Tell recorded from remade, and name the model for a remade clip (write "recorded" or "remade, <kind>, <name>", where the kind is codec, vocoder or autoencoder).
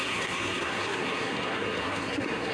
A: remade, codec, SNAC